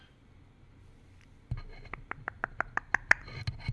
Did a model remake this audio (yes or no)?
no